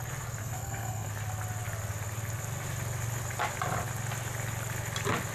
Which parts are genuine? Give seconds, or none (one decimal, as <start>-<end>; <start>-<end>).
0.0-0.4; 1.1-5.3